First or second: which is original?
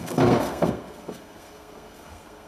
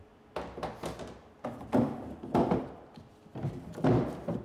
second